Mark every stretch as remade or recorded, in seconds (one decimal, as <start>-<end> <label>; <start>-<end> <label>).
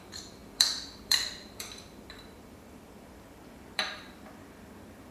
0.0-5.1 remade